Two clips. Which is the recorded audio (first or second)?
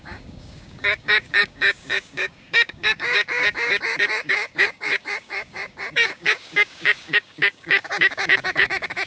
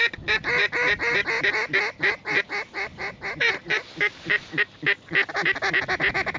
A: second